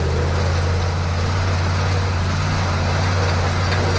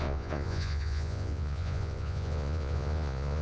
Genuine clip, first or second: first